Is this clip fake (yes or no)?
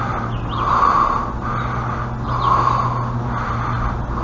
no